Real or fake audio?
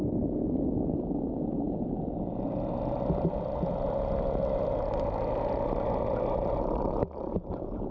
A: real